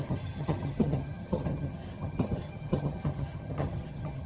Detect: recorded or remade remade